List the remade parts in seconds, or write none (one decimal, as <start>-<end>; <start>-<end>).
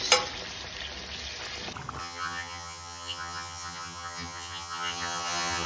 2.0-5.7